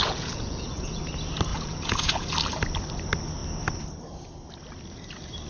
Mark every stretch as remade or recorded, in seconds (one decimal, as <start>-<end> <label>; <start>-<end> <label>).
0.0-1.0 remade; 1.0-1.5 recorded; 1.5-2.3 remade; 2.3-5.5 recorded